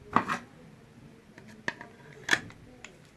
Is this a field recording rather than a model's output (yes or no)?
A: yes